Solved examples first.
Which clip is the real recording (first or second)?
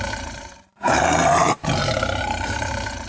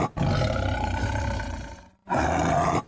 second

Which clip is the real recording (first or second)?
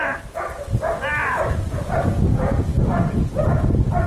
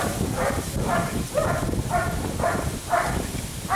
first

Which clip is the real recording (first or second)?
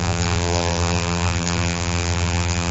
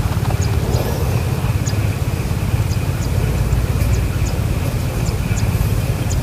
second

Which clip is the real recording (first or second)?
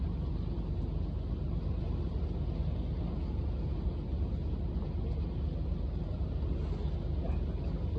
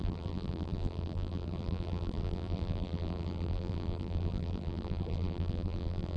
first